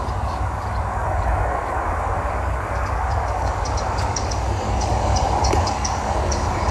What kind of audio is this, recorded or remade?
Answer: remade